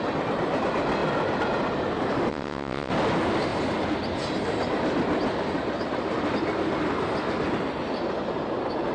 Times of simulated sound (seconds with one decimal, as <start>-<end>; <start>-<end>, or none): 2.3-2.9